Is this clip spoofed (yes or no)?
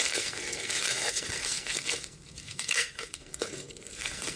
yes